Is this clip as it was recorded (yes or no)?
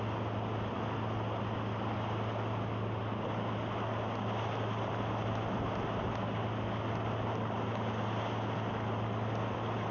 yes